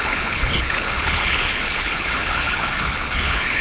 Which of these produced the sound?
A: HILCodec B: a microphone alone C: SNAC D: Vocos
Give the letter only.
A